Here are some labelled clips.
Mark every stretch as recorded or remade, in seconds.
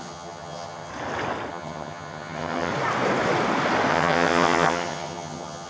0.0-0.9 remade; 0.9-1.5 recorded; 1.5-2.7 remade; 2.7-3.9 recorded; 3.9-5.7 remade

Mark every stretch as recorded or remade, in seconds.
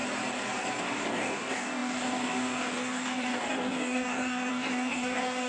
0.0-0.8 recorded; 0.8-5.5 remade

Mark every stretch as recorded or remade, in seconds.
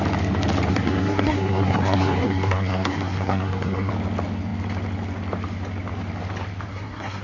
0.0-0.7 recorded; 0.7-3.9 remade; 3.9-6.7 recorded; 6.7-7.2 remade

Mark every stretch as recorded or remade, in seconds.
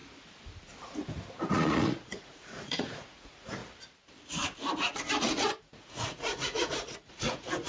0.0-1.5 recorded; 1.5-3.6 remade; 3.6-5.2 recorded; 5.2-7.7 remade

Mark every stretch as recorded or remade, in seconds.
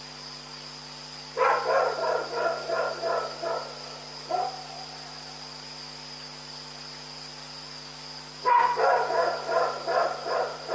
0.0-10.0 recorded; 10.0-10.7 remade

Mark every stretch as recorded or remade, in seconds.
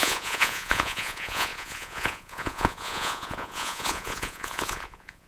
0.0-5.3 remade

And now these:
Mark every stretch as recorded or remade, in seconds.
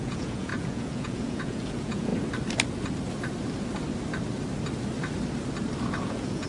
0.0-2.1 remade; 2.1-6.0 recorded; 6.0-6.5 remade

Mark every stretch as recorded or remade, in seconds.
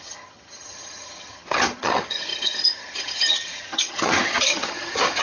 0.0-5.2 remade